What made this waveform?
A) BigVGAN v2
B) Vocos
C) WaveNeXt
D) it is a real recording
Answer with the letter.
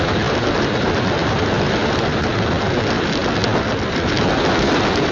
D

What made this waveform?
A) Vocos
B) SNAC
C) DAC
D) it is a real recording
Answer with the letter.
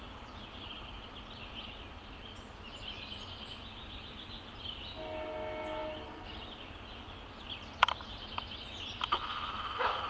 D